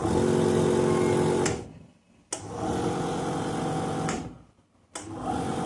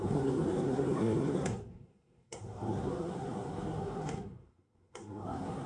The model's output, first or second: second